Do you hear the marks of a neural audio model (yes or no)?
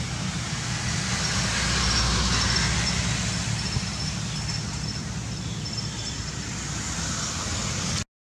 no